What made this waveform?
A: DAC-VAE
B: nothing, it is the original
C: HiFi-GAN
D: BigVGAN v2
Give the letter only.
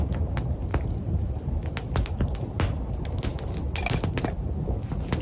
B